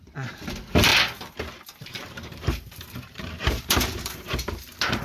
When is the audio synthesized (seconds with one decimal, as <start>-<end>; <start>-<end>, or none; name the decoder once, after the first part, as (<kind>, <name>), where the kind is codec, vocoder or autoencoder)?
1.8-5.0 (vocoder, BigVGAN v2)